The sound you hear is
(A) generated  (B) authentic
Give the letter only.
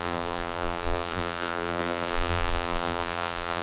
A